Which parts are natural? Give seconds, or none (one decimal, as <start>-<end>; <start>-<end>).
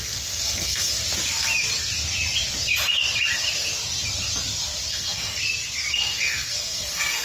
0.9-4.9; 5.4-5.9